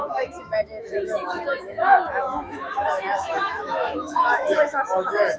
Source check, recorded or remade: remade